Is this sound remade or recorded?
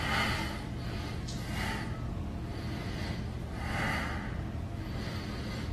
recorded